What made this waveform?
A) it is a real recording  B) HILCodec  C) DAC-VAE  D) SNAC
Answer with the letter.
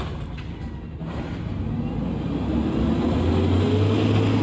A